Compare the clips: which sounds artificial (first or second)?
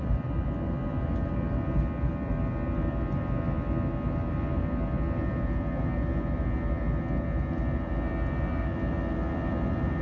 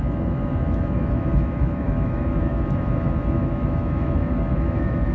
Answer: second